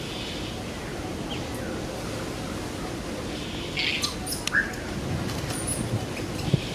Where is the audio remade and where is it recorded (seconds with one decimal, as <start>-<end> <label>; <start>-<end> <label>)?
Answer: 0.0-6.7 recorded